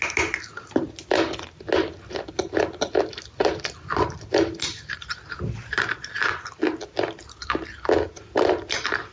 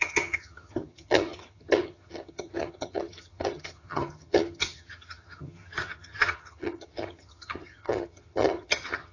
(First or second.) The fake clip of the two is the second